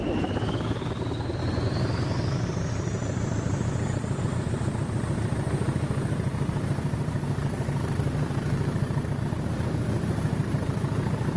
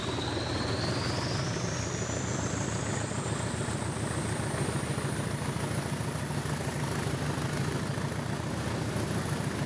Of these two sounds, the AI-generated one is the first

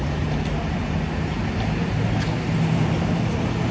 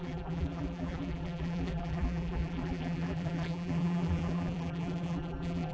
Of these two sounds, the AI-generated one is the second